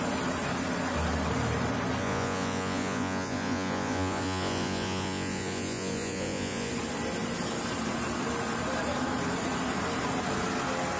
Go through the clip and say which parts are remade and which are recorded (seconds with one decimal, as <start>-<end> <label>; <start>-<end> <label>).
0.0-2.0 recorded; 2.0-6.7 remade; 6.7-11.0 recorded